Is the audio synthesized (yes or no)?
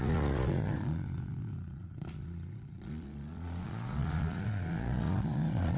yes